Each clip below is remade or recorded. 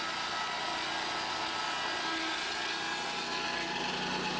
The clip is recorded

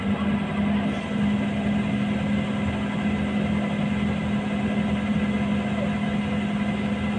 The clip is recorded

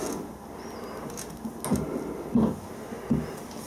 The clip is recorded